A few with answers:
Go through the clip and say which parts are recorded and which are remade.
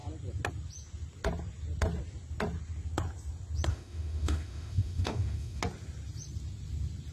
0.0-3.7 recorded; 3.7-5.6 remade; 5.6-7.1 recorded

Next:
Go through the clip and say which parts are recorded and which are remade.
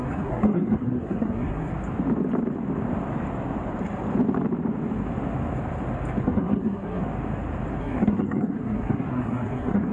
0.0-1.7 remade; 1.7-6.2 recorded; 6.2-7.0 remade; 7.0-7.8 recorded; 7.8-9.9 remade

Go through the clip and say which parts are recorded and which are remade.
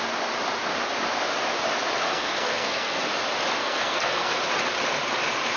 0.0-2.1 recorded; 2.1-3.1 remade; 3.1-3.6 recorded; 3.6-4.4 remade; 4.4-5.6 recorded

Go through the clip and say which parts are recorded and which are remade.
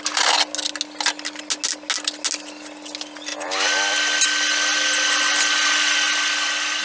0.0-6.8 recorded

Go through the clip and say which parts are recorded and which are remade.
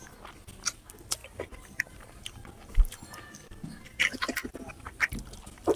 0.0-5.8 recorded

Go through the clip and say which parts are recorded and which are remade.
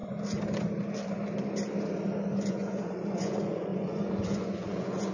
0.0-2.5 recorded; 2.5-5.1 remade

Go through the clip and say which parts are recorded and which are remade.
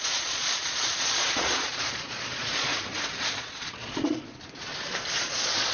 0.0-2.7 remade; 2.7-3.2 recorded; 3.2-4.7 remade; 4.7-5.2 recorded; 5.2-5.7 remade